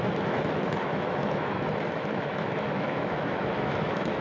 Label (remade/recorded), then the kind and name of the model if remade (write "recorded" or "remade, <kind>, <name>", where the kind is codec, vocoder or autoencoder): remade, autoencoder, DAC-VAE